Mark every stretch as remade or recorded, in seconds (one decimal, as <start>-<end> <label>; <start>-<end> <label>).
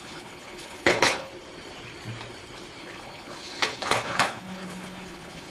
0.0-1.3 remade; 1.3-2.8 recorded; 2.8-5.5 remade